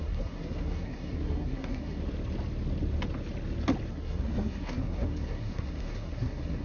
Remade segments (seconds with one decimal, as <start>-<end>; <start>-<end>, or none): 0.0-2.0; 3.9-6.6